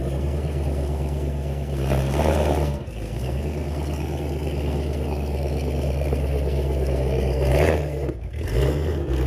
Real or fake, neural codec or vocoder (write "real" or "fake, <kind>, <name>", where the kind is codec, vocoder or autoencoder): fake, codec, SNAC